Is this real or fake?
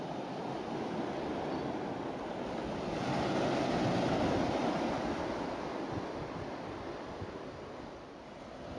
real